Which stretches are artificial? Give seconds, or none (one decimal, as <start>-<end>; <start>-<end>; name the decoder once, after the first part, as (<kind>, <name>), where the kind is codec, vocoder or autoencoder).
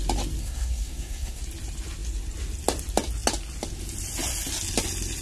0.4-1.4 (codec, SNAC)